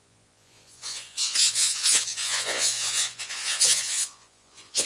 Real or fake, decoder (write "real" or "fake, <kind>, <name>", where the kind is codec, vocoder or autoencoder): fake, vocoder, Vocos